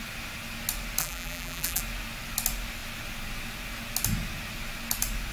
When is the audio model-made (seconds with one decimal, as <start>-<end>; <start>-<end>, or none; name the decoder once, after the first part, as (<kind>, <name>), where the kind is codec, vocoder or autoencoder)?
1.0-1.8 (vocoder, BigVGAN v2)